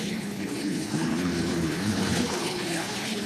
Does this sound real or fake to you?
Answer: fake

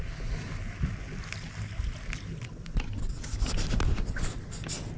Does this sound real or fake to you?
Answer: real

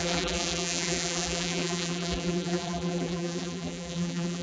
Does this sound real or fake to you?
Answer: fake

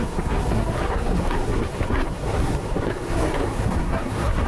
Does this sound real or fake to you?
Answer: fake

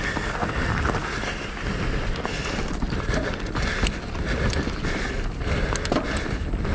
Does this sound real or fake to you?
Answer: real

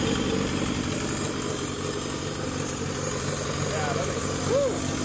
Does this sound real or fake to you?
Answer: real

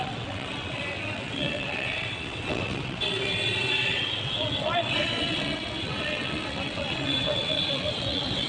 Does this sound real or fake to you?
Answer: fake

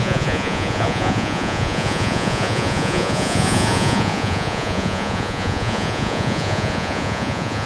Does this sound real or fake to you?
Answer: fake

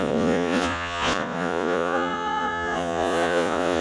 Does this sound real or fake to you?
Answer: fake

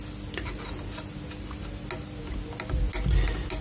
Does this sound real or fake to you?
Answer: real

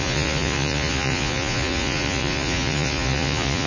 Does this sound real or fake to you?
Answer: fake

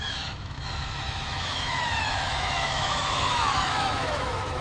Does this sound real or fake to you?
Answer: fake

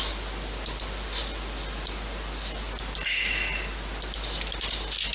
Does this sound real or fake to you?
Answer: real